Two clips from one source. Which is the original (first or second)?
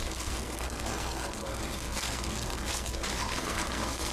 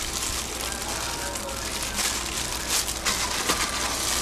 second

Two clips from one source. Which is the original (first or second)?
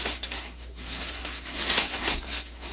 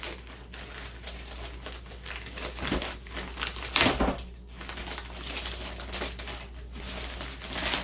second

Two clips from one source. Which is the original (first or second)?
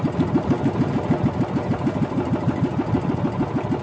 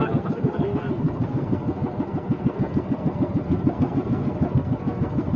first